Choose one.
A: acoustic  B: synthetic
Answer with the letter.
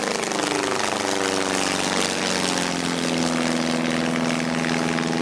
A